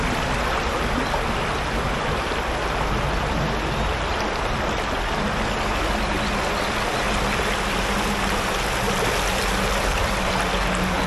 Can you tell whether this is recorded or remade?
recorded